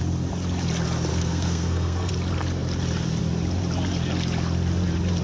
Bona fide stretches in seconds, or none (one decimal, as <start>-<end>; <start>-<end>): 0.0-1.1; 2.1-5.2